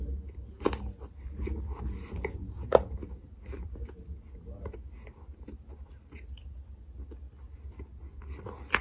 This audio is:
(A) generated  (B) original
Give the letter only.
B